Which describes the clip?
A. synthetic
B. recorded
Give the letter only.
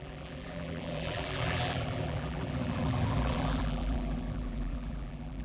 A